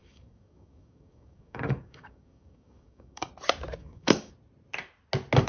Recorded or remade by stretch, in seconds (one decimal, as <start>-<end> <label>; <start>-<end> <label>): 0.0-3.3 remade; 3.3-3.8 recorded; 3.8-4.3 remade; 4.3-5.5 recorded